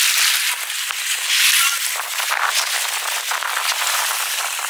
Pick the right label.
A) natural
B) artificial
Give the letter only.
A